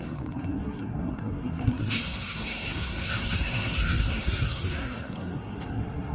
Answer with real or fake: fake